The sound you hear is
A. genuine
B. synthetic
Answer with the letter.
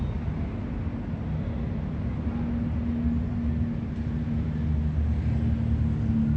A